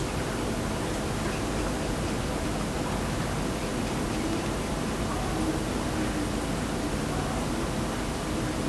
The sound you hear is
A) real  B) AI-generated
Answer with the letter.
A